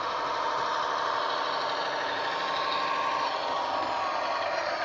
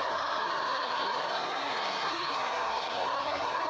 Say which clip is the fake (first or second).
second